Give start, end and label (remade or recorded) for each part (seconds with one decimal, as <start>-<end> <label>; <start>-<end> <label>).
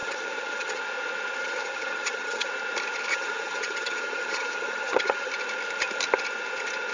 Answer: 0.0-0.8 remade; 0.8-1.4 recorded; 1.4-2.5 remade; 2.5-3.1 recorded; 3.1-5.3 remade; 5.3-6.9 recorded